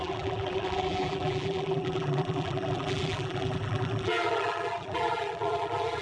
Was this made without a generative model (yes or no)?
no